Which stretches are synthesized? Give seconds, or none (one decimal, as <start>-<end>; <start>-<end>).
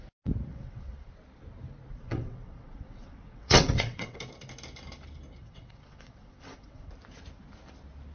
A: 0.5-1.1; 1.9-4.2; 5.4-6.9